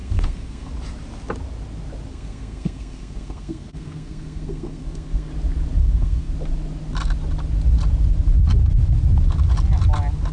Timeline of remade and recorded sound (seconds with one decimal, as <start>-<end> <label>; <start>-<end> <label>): 0.0-0.7 remade; 0.7-2.1 recorded; 2.1-5.3 remade; 5.3-5.8 recorded; 5.8-6.3 remade; 6.3-10.3 recorded